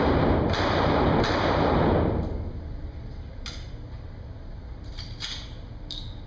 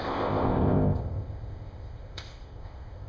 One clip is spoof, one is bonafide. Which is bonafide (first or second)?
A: first